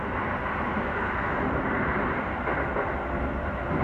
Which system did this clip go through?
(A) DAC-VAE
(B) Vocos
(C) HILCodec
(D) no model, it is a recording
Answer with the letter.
D